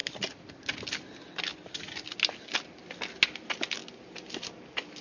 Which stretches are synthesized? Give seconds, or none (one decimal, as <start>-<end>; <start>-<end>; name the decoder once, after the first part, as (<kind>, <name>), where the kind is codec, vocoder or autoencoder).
none